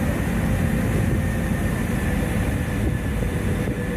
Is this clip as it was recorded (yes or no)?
yes